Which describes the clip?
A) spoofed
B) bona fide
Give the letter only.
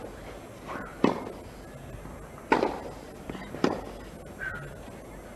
B